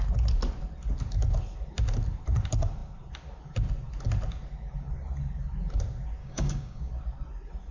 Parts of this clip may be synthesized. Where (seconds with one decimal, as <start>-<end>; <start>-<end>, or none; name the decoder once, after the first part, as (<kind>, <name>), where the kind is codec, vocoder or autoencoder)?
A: 6.2-6.9 (codec, DAC)